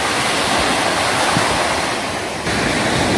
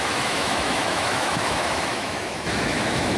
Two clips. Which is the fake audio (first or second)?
second